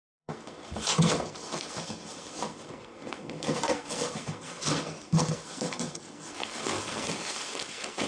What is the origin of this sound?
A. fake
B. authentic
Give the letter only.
A